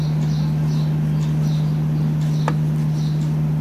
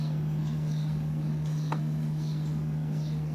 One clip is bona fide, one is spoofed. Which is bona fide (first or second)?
first